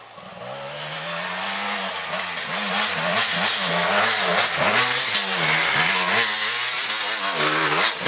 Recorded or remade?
recorded